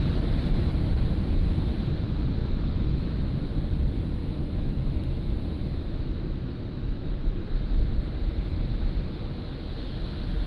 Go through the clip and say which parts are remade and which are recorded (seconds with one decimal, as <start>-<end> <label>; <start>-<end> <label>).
0.0-2.4 recorded; 2.4-3.2 remade; 3.2-4.2 recorded; 4.2-7.8 remade; 7.8-10.5 recorded